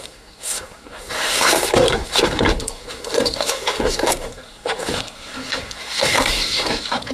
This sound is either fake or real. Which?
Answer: fake